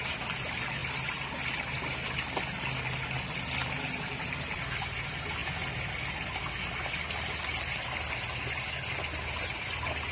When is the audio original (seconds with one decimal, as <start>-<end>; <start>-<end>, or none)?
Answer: 0.0-10.1